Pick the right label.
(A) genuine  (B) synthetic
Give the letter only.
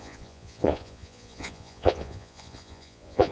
B